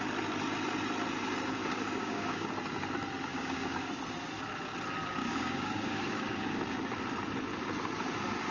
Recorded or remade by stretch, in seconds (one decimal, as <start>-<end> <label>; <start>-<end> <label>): 0.0-1.6 recorded; 1.6-2.5 remade; 2.5-3.3 recorded; 3.3-3.9 remade; 3.9-5.2 recorded; 5.2-6.6 remade; 6.6-8.5 recorded